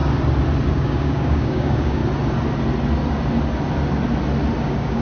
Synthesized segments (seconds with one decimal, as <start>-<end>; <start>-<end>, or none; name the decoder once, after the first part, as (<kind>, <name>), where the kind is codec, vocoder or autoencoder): 0.7-2.0 (codec, DAC); 4.6-5.0